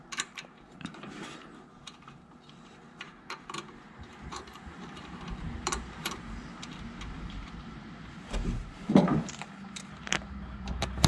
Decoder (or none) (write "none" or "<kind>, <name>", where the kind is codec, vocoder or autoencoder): vocoder, BigVGAN v2